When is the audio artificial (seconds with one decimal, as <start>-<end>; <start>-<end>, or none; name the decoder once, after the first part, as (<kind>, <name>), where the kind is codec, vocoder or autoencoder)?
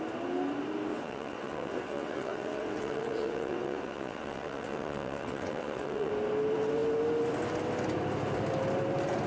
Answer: 0.9-6.1 (vocoder, WaveNeXt)